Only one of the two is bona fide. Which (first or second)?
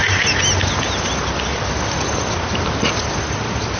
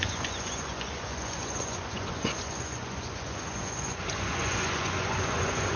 first